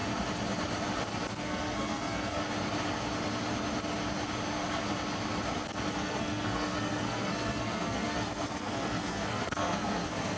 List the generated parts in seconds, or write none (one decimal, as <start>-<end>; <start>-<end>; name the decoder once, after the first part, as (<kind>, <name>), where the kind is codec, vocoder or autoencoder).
1.3-2.4 (codec, SNAC); 5.9-10.4

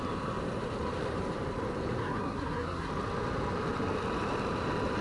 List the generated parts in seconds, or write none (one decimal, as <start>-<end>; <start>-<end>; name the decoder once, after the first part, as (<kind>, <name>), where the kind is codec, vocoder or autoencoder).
2.0-2.9 (codec, SNAC)

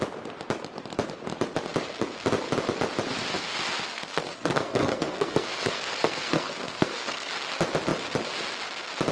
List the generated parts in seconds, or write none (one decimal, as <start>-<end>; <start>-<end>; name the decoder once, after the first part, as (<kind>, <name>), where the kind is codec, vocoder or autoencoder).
3.9-7.3 (codec, SNAC)

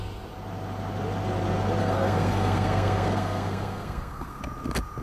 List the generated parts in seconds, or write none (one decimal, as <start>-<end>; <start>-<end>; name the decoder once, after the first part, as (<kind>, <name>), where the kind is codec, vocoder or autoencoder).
1.8-4.4 (codec, SNAC)

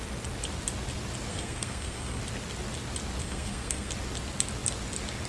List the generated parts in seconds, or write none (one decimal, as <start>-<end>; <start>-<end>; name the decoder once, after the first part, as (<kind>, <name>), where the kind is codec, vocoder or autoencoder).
1.3-2.2 (codec, SNAC); 3.2-3.9

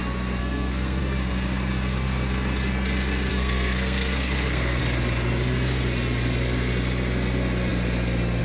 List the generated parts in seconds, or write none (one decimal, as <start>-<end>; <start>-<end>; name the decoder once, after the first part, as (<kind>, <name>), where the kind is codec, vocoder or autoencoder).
0.4-1.0 (codec, SNAC); 3.3-4.8